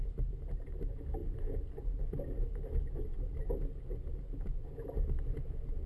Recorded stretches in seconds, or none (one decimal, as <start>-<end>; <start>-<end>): 0.0-1.2; 1.7-5.9